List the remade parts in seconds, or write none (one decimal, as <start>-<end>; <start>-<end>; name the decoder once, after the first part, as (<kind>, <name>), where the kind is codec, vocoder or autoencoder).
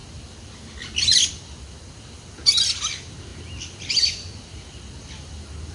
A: none